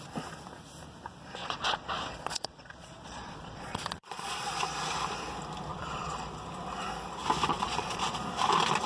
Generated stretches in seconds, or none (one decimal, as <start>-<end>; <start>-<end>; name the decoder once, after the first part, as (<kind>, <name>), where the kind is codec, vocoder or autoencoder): 1.4-4.6 (vocoder, Vocos); 5.7-6.3; 7.5-8.2